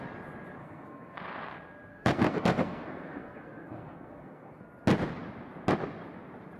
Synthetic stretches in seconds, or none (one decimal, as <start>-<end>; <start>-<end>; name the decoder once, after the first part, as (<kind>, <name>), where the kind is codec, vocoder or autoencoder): 0.6-1.2 (codec, SNAC); 1.9-4.6